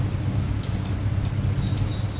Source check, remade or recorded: recorded